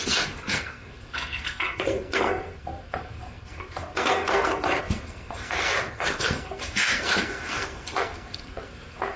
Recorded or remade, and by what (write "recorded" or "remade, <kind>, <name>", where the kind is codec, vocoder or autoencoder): remade, codec, SNAC